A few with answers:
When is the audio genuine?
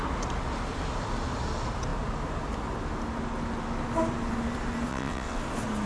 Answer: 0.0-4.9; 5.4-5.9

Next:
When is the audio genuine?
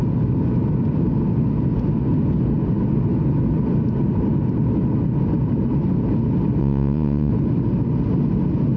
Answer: 0.0-6.6; 7.3-8.8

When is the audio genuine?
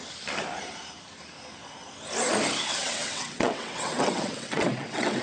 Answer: 0.0-2.8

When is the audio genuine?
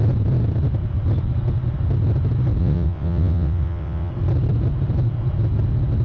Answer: 0.0-2.6; 4.1-6.0